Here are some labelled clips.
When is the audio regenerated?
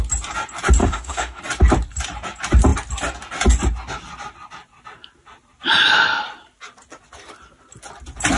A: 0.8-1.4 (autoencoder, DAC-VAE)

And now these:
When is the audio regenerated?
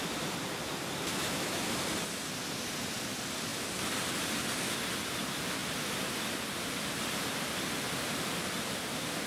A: 1.1-1.6 (autoencoder, DAC-VAE)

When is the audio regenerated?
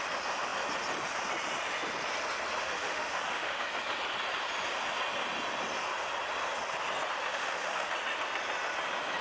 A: 2.6-3.6 (autoencoder, DAC-VAE); 7.3-7.9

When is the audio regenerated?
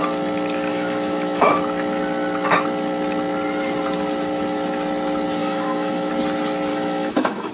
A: 0.7-1.5 (autoencoder, DAC-VAE); 5.4-6.1; 6.7-7.5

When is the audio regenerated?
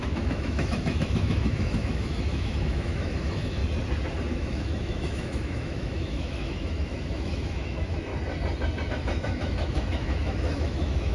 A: 0.0-3.6 (autoencoder, DAC-VAE); 4.3-8.1; 8.9-11.1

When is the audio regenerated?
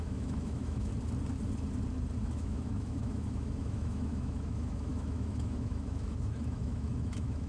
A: 0.0-0.9 (autoencoder, DAC-VAE); 2.2-7.5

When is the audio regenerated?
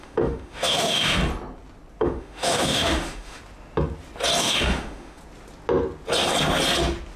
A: 0.0-1.2 (autoencoder, DAC-VAE); 2.0-3.4; 4.4-5.2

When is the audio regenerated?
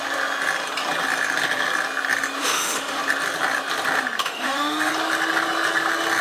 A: 2.4-3.0 (autoencoder, DAC-VAE); 4.2-4.9